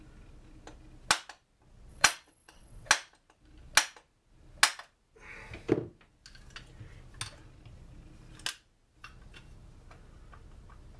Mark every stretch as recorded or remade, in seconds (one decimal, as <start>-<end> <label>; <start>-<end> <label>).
0.0-1.9 recorded; 1.9-2.9 remade; 2.9-11.0 recorded